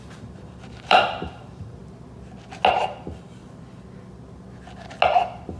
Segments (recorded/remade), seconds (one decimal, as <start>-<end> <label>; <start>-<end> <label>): 0.0-1.8 remade; 1.8-2.7 recorded; 2.7-3.4 remade; 3.4-5.6 recorded